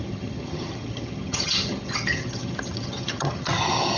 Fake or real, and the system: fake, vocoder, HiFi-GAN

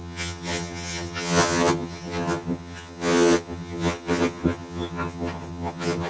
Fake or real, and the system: fake, vocoder, HiFi-GAN